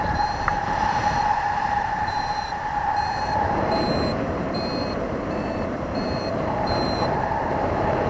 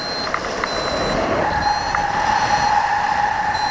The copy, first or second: first